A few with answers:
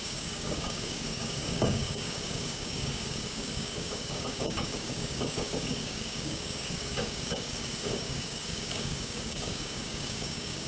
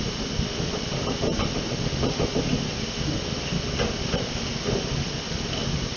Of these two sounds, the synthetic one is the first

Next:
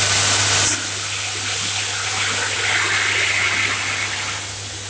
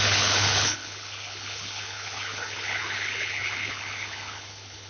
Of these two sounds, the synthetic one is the second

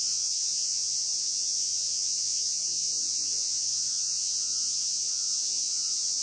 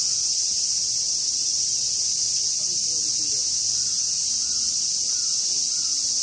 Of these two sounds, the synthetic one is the first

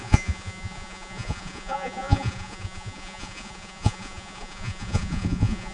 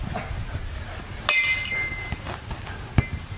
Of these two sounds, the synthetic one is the first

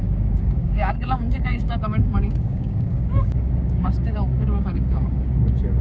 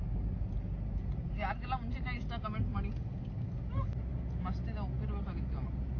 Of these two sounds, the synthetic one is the first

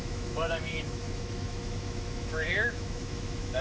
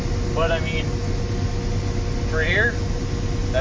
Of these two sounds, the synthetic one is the first